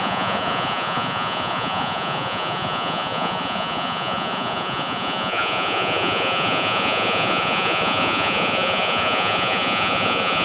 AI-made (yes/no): yes